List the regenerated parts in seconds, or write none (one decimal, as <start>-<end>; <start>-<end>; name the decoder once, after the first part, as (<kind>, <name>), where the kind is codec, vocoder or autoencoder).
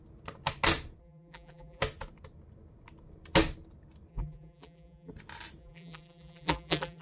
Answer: 1.0-1.8 (vocoder, BigVGAN v2); 4.1-5.1; 5.6-7.0